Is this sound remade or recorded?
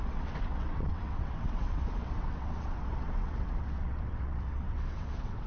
remade